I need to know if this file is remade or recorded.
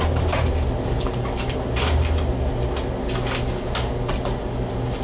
recorded